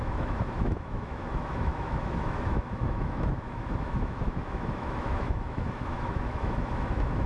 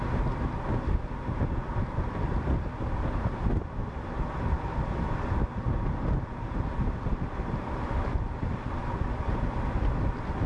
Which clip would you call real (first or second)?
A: second